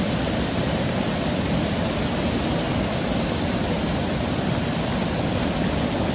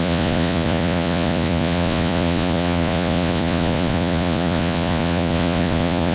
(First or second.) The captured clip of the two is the first